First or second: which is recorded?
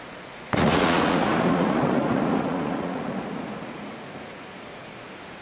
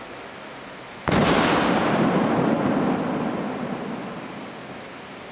second